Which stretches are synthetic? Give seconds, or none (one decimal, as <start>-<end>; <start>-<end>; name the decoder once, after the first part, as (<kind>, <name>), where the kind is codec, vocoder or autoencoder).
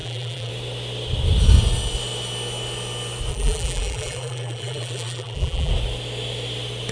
0.0-0.5 (vocoder, BigVGAN v2); 3.3-5.7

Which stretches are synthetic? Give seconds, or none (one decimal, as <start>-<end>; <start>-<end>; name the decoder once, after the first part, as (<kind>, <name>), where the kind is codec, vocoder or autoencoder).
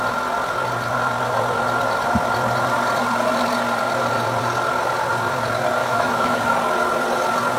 5.8-6.4 (autoencoder, DAC-VAE)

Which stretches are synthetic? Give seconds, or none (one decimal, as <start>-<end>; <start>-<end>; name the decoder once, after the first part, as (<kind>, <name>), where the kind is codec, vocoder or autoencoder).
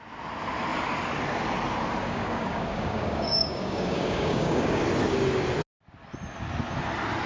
2.0-4.8 (codec, DAC)